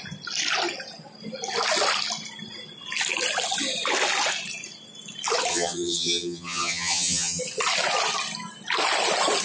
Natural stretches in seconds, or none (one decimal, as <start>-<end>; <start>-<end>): 0.0-5.5; 7.4-9.4